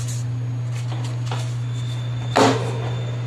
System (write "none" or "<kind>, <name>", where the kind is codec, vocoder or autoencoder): none